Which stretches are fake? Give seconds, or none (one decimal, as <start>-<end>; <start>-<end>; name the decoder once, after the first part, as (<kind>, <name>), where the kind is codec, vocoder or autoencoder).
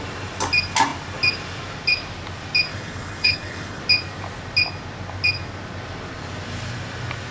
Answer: 2.7-3.8 (codec, HILCodec)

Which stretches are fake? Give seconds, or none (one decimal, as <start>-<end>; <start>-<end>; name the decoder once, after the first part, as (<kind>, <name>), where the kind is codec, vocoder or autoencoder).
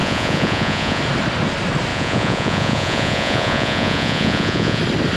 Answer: 0.0-1.0 (vocoder, Vocos); 1.9-4.8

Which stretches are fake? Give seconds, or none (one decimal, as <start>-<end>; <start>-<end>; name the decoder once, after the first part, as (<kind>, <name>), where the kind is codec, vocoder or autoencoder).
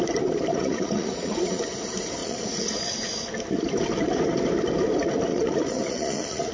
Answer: 0.5-1.6 (vocoder, Vocos); 2.2-2.8; 5.3-6.5